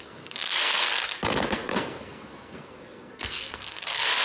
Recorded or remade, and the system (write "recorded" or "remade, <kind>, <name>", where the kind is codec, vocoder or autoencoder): remade, codec, SNAC